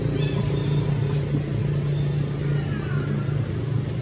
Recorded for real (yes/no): yes